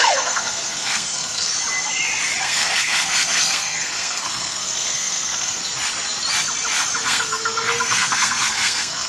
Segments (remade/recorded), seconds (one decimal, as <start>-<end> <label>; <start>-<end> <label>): 0.0-1.5 remade; 1.5-2.4 recorded; 2.4-5.6 remade; 5.6-7.0 recorded; 7.0-9.1 remade